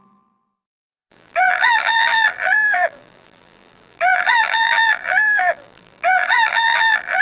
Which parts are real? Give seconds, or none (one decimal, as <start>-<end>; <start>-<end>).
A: none